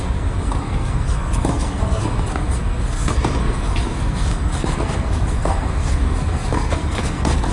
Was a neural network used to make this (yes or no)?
yes